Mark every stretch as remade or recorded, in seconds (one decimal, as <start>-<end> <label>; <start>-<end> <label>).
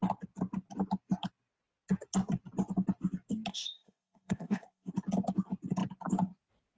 0.0-3.5 recorded; 3.5-4.9 remade; 4.9-6.8 recorded